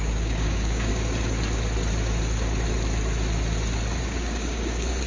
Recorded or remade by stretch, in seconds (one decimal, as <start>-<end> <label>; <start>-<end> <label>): 0.0-0.9 remade; 0.9-4.0 recorded; 4.0-5.1 remade